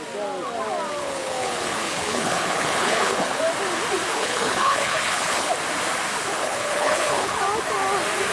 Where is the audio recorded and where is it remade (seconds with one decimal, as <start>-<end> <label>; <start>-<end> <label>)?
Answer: 0.0-1.0 recorded; 1.0-3.4 remade; 3.4-4.1 recorded; 4.1-5.5 remade; 5.5-6.3 recorded; 6.3-7.4 remade; 7.4-8.3 recorded